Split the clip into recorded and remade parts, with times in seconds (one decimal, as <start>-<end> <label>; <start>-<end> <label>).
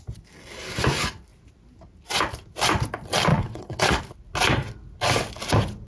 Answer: 0.0-3.3 recorded; 3.3-4.0 remade; 4.0-5.9 recorded